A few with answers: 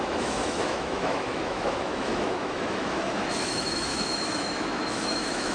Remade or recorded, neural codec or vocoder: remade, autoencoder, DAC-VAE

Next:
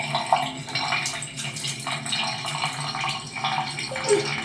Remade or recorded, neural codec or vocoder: recorded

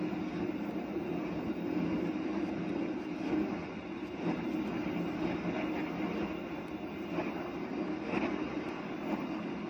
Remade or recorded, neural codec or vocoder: recorded